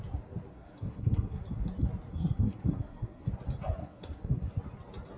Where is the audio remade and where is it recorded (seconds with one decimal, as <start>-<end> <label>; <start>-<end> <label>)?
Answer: 0.0-0.5 recorded; 0.5-1.4 remade; 1.4-2.1 recorded; 2.1-3.3 remade; 3.3-3.8 recorded; 3.8-4.5 remade; 4.5-5.2 recorded